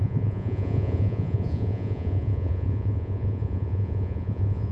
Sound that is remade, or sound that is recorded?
remade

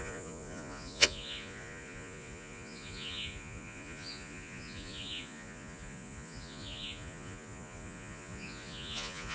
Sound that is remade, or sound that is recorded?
remade